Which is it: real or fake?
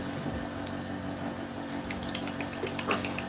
real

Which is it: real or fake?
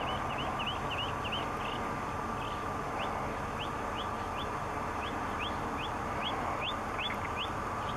real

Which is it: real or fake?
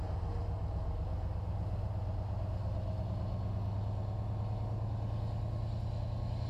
real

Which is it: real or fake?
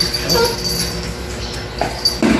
real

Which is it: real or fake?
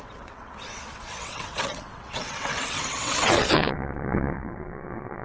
fake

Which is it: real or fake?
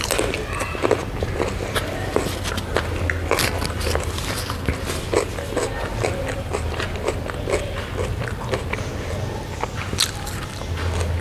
real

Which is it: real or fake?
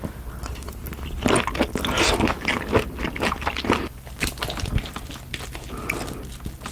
real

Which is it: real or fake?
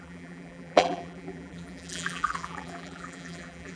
fake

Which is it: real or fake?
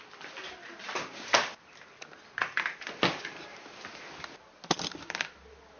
real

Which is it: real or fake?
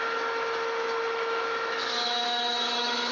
fake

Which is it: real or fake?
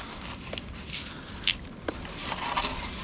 real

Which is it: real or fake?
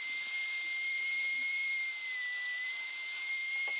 fake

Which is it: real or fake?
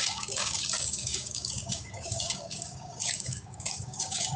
fake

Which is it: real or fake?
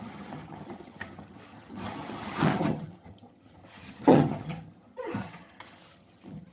fake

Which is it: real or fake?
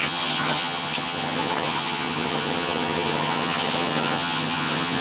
fake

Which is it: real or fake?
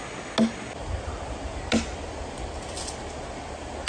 real